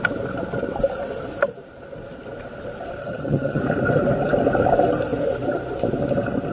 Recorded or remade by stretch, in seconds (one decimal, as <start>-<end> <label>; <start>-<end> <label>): 0.0-3.0 recorded; 3.0-3.6 remade; 3.6-6.5 recorded